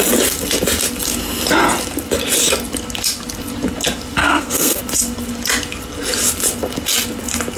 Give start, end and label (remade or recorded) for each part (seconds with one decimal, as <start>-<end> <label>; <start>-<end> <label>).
0.0-4.2 recorded; 4.2-4.8 remade; 4.8-7.6 recorded